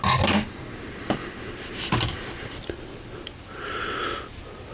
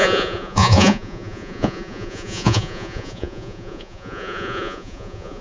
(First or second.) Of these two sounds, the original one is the first